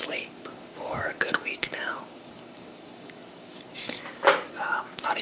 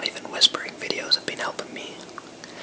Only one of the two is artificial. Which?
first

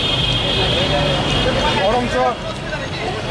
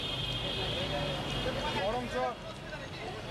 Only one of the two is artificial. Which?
first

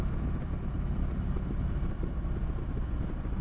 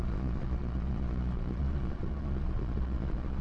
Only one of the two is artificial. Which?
second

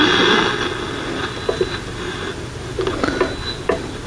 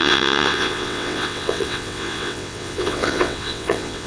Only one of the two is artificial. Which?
second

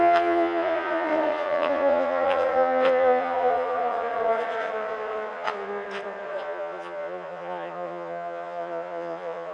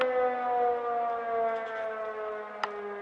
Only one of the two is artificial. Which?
first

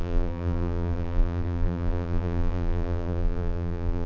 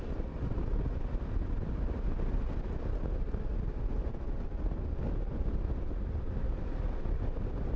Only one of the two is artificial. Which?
first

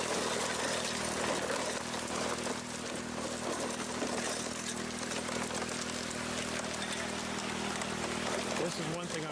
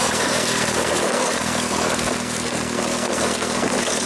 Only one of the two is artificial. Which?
second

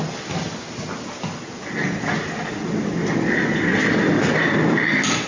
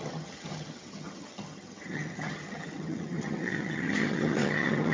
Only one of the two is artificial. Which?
second